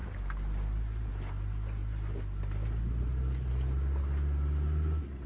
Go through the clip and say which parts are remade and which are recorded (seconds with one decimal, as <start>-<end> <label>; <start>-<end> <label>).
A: 0.0-5.3 recorded